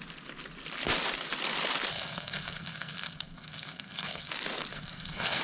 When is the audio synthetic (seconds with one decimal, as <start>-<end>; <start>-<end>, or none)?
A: 1.9-4.3; 4.7-5.4